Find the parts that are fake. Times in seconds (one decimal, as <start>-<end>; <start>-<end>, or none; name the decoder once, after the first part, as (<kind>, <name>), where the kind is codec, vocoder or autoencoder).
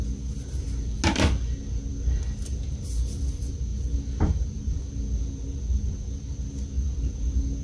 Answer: 3.7-4.8 (vocoder, BigVGAN v2)